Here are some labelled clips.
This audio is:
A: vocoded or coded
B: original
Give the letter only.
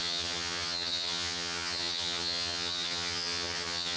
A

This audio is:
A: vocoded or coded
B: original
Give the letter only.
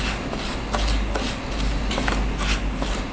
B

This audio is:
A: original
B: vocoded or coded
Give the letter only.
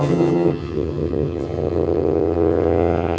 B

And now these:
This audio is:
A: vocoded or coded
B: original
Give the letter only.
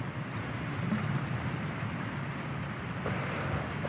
B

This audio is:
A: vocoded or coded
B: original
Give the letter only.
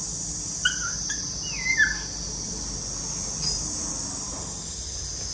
B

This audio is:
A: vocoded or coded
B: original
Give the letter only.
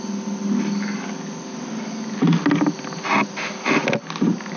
B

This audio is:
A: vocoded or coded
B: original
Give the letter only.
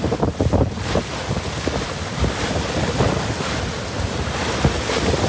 B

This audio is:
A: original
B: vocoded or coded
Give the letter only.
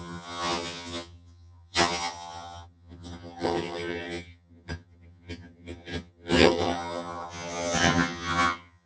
B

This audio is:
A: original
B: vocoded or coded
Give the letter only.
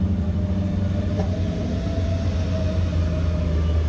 A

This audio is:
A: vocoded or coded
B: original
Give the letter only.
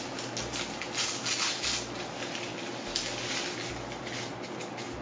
B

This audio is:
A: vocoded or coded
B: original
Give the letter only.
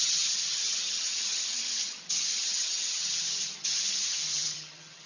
A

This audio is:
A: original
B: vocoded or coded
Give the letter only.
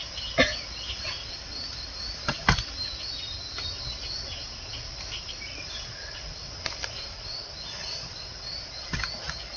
A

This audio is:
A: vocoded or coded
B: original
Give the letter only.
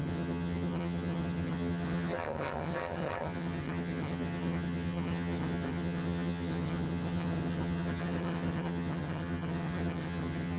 A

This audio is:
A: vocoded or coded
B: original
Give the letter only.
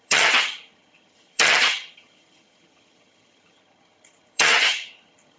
A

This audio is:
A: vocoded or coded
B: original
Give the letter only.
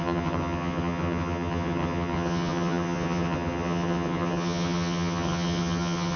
A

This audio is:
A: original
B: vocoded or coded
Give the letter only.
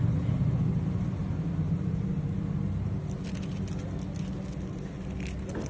A